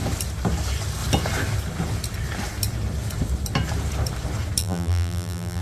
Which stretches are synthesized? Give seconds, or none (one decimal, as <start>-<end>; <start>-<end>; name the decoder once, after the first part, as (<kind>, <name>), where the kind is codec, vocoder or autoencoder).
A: 4.6-5.6 (vocoder, BigVGAN v2)